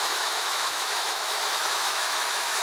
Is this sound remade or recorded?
remade